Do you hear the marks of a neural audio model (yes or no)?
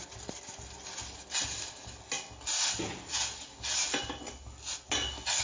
no